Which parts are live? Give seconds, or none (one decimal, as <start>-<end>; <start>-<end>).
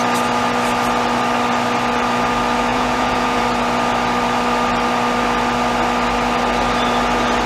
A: 0.0-2.7; 3.4-7.5